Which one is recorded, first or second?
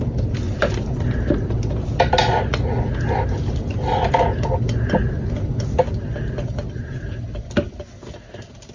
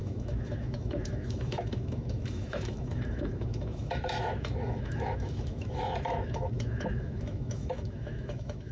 first